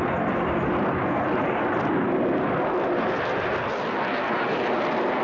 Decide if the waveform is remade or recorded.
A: recorded